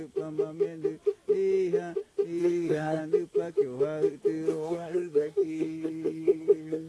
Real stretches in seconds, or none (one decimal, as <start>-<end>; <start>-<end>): 0.0-2.4; 3.0-4.5